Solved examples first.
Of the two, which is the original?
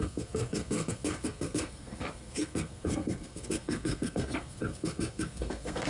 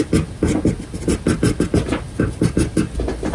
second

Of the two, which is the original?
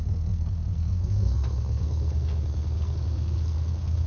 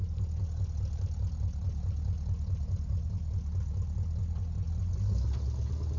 second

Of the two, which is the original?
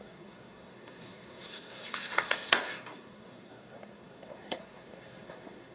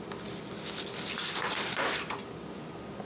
second